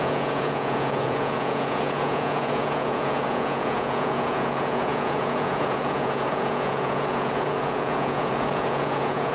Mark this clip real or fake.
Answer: fake